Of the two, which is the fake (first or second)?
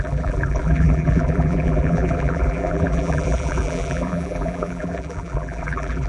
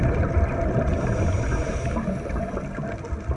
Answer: first